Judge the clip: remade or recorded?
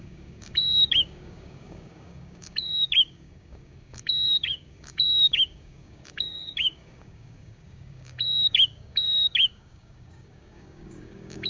remade